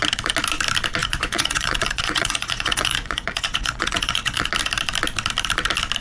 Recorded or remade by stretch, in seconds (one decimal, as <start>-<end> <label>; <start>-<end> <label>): 0.0-1.0 recorded; 1.0-4.5 remade; 4.5-6.0 recorded